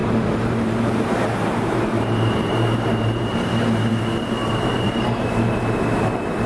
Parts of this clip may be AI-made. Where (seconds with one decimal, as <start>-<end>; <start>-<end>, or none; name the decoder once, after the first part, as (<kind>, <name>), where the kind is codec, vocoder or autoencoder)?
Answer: 0.0-3.9 (vocoder, BigVGAN v2); 4.4-5.6